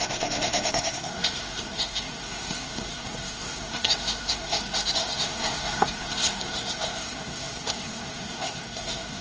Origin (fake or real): fake